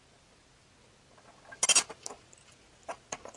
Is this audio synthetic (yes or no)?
no